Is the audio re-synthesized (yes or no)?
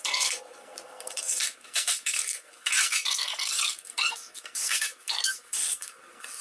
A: yes